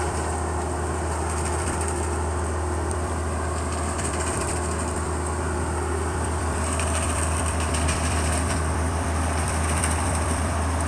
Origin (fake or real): fake